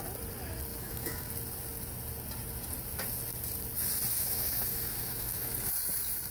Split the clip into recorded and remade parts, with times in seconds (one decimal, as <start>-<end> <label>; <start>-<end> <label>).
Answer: 0.0-0.7 recorded; 0.7-1.3 remade; 1.3-4.1 recorded; 4.1-5.5 remade; 5.5-6.3 recorded

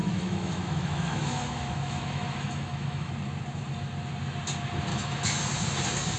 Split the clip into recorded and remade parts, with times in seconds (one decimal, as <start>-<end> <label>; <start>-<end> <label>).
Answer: 0.0-3.1 remade; 3.1-4.9 recorded; 4.9-5.4 remade; 5.4-6.2 recorded

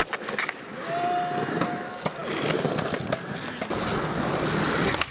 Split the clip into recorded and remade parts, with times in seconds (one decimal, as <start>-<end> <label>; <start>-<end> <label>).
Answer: 0.0-5.1 recorded

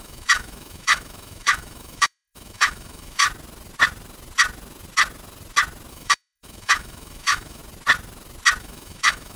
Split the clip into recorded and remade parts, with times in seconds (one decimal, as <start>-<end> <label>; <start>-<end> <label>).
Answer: 0.0-3.2 remade; 3.2-5.9 recorded; 5.9-7.6 remade; 7.6-8.6 recorded; 8.6-9.4 remade